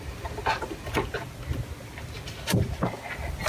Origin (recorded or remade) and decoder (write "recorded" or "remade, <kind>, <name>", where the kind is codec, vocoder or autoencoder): recorded